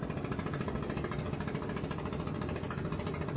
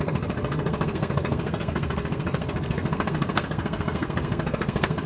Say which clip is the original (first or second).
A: first